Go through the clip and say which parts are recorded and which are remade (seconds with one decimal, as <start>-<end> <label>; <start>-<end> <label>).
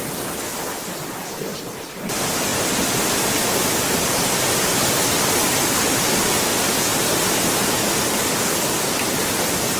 0.0-9.8 recorded